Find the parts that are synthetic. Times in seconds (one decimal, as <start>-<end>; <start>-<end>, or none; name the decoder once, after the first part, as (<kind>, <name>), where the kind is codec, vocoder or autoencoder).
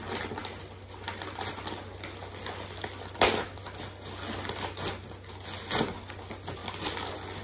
none